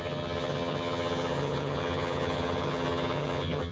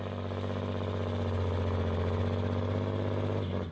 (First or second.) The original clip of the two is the second